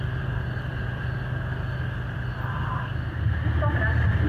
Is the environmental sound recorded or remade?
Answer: recorded